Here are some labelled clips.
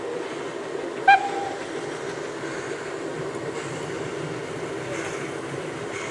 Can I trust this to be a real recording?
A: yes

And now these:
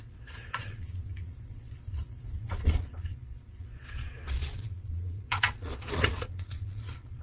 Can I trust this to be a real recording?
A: no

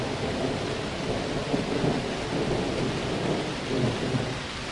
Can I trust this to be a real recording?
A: yes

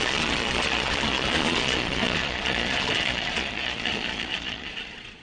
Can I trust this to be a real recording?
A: no